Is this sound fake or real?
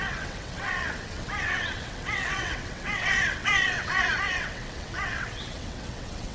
fake